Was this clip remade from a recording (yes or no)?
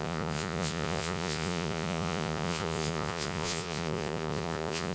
yes